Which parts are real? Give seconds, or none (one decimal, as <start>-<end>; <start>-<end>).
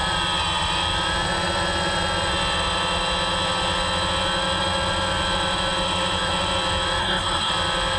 0.0-7.0; 7.5-8.0